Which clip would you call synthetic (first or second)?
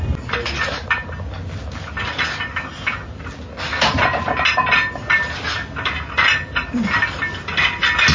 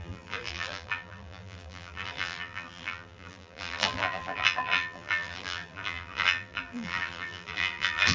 second